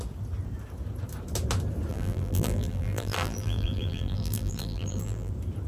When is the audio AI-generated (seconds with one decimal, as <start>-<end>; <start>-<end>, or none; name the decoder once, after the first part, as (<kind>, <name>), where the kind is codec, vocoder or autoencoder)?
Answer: 1.9-5.3 (vocoder, BigVGAN v2)

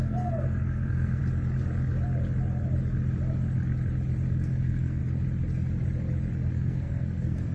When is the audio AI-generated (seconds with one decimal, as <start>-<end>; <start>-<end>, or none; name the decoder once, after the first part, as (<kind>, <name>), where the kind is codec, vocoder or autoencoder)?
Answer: 0.0-1.2 (codec, SNAC); 4.3-5.0; 6.5-7.5

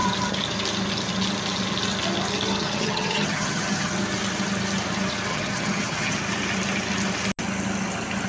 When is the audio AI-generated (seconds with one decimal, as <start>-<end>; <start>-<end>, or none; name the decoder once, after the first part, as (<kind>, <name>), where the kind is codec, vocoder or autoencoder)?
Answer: 2.6-3.9 (vocoder, HiFi-GAN); 5.3-6.2

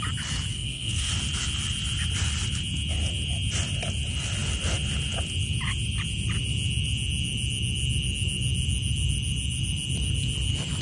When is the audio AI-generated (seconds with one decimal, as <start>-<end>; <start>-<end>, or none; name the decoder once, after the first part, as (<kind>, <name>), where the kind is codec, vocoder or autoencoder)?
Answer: 0.5-1.1 (codec, SNAC)